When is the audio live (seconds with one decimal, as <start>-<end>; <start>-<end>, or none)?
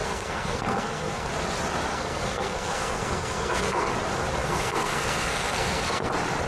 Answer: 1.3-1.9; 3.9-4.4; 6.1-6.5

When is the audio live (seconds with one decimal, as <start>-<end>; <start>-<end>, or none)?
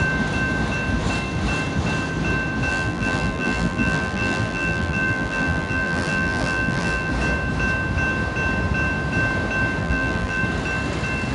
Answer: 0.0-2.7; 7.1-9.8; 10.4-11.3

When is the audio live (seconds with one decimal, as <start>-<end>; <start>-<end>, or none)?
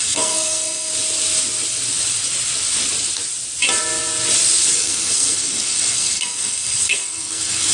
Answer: 0.9-4.7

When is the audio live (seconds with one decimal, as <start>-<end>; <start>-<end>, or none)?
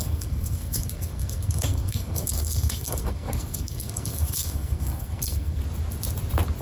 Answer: 5.6-6.6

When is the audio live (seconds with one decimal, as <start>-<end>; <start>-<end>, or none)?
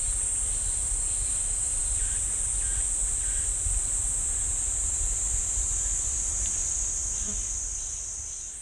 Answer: 0.0-8.6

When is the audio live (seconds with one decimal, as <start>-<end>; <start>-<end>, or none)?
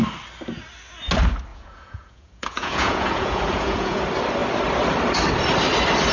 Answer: 0.0-1.5; 4.0-6.1